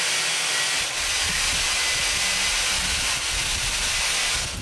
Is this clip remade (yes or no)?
no